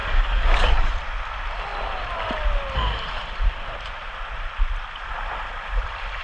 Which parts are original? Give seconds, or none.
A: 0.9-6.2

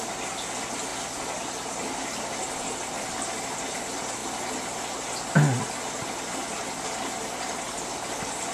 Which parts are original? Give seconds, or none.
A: 0.0-8.5

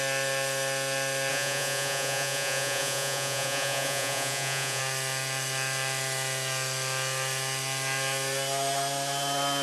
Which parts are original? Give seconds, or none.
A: 0.0-1.3; 4.8-9.6

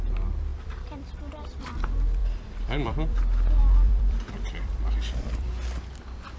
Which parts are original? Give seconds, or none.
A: 0.0-0.5; 1.6-2.2; 3.2-3.6; 5.5-6.4

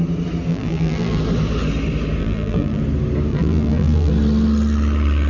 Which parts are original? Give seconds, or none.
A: 0.0-0.5; 1.2-2.2; 2.8-3.3; 4.1-5.3

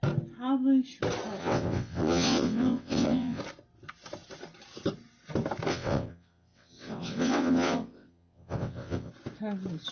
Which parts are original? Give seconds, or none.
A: 0.0-1.4; 3.4-5.7; 9.1-9.9

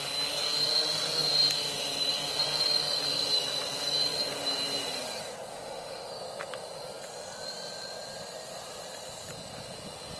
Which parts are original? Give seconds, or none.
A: 0.0-5.5; 6.1-10.2